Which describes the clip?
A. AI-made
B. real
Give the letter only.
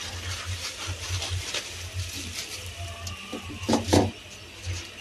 B